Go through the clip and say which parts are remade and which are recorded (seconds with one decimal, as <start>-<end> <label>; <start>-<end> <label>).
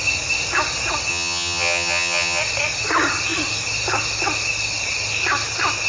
0.0-1.1 recorded; 1.1-2.4 remade; 2.4-5.9 recorded